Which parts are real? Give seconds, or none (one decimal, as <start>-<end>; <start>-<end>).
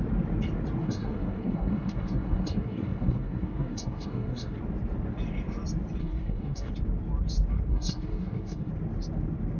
0.0-0.8; 4.6-6.0; 6.7-7.7; 8.7-9.6